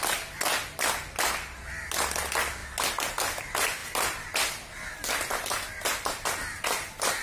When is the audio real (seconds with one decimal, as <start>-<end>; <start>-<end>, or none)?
0.0-7.2